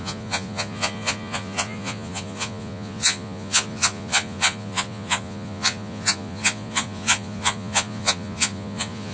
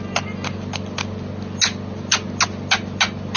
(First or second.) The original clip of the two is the second